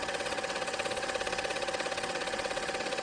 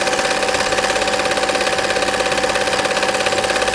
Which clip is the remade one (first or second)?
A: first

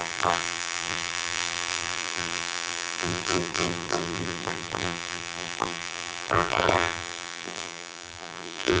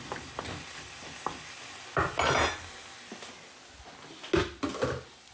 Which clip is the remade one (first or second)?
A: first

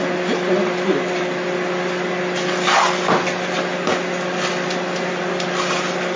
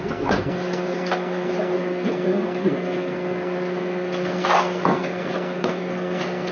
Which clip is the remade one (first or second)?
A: second